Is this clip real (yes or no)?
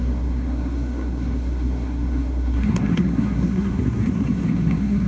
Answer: no